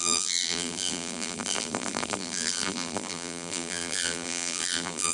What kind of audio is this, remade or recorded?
remade